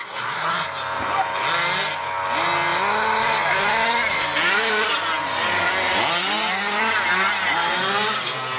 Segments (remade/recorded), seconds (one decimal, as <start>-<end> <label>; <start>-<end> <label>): 0.0-0.5 remade; 0.5-8.6 recorded

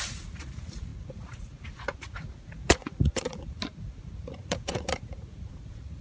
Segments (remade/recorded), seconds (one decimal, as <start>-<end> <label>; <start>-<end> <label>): 0.0-6.0 remade

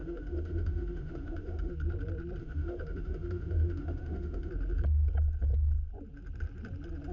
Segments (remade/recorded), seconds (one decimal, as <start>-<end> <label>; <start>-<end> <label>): 0.0-1.7 remade; 1.7-2.4 recorded; 2.4-4.5 remade; 4.5-7.1 recorded

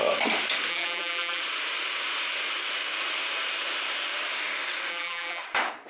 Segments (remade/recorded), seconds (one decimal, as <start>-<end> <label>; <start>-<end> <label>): 0.0-0.7 recorded; 0.7-1.4 remade; 1.4-4.9 recorded; 4.9-5.4 remade; 5.4-5.9 recorded

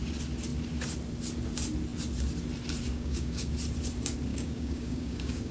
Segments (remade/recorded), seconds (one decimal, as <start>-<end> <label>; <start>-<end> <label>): 0.0-2.9 recorded; 2.9-3.5 remade; 3.5-4.3 recorded; 4.3-5.5 remade

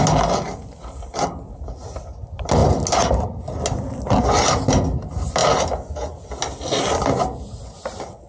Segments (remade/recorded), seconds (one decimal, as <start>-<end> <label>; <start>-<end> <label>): 0.0-8.3 recorded

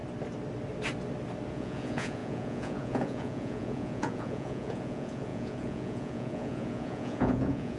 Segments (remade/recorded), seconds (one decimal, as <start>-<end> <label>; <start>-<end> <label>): 0.0-1.5 recorded; 1.5-7.8 remade

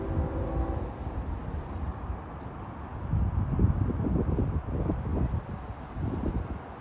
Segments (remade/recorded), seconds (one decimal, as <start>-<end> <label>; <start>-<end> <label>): 0.0-6.8 recorded